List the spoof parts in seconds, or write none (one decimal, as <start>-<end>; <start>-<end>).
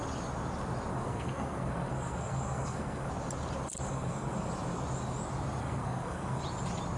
0.9-3.1; 3.9-4.5; 5.6-6.4